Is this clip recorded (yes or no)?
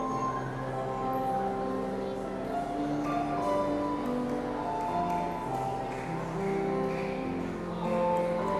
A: yes